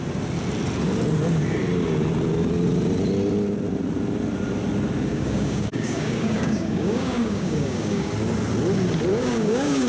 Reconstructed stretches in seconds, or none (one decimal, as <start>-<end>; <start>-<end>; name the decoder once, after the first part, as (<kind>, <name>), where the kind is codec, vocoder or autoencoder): 5.1-8.1 (codec, DAC); 9.1-9.9